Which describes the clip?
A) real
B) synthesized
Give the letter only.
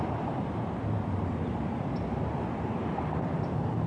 B